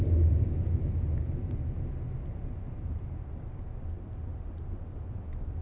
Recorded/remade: recorded